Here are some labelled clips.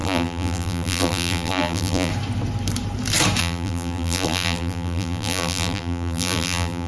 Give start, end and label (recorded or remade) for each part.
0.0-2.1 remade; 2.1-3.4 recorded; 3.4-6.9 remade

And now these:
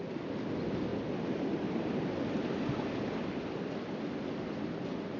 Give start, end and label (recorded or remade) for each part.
0.0-5.2 recorded

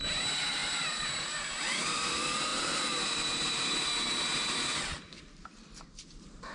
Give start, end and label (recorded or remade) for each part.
0.0-4.9 remade; 4.9-5.9 recorded; 5.9-6.5 remade

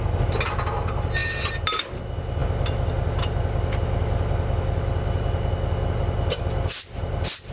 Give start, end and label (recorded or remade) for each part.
0.0-1.2 recorded; 1.2-2.0 remade; 2.0-7.5 recorded

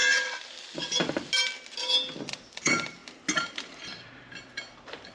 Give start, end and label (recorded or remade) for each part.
0.0-2.2 recorded; 2.2-3.0 remade; 3.0-3.5 recorded; 3.5-5.1 remade

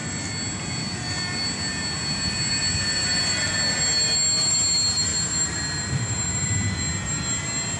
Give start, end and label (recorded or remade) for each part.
0.0-5.1 recorded; 5.1-6.8 remade; 6.8-7.8 recorded

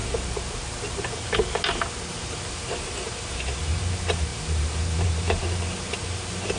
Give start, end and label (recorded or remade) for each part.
0.0-2.1 recorded; 2.1-6.6 remade